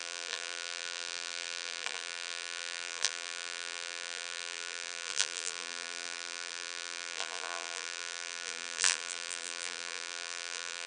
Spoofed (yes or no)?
yes